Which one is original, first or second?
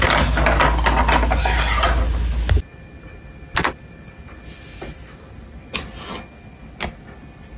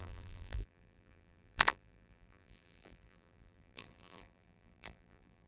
first